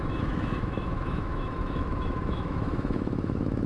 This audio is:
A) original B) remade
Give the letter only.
B